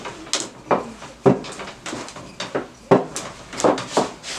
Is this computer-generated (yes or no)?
no